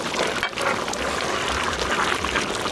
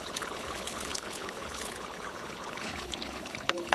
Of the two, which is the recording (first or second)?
first